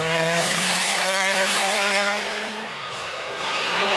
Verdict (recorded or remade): remade